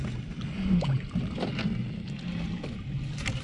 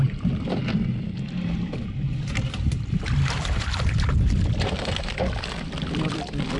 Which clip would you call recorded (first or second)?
first